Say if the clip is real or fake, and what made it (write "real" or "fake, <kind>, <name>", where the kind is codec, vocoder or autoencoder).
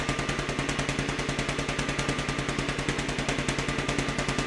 real